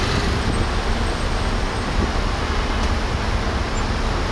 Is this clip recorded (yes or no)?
yes